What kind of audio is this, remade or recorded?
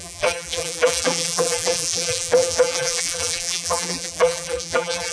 remade